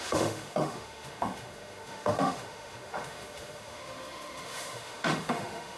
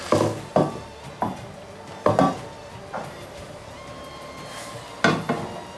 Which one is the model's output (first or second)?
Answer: first